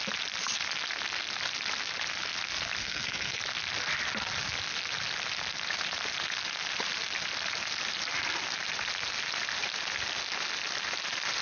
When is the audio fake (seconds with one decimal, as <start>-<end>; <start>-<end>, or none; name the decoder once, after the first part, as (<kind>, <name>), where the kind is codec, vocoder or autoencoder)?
2.8-3.4 (codec, SNAC)